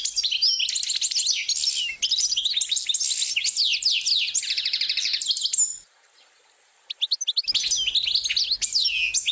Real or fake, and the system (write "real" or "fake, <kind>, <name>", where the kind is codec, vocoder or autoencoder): real